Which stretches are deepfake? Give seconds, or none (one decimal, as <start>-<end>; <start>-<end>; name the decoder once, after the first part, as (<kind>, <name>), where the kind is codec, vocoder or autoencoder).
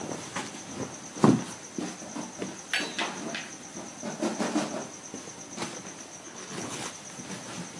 6.1-6.9 (codec, HILCodec)